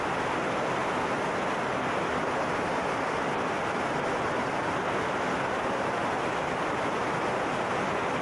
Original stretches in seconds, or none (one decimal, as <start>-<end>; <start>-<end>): 0.0-8.2